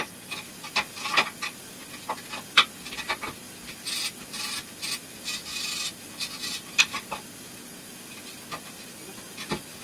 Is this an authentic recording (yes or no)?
yes